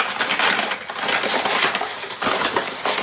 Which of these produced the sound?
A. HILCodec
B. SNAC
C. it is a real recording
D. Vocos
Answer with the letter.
C